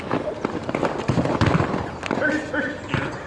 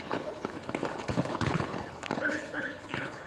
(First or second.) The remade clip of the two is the second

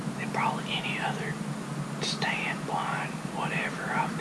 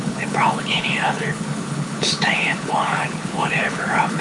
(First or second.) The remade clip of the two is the second